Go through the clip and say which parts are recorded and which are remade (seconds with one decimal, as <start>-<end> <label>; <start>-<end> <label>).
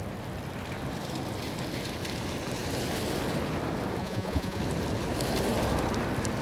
0.0-4.0 recorded; 4.0-4.6 remade; 4.6-6.4 recorded